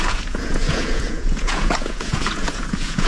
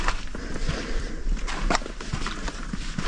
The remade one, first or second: first